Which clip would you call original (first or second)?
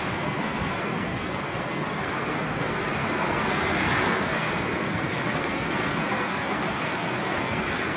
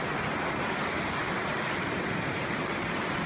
second